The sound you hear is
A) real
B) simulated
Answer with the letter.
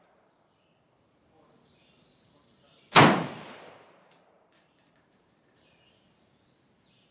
B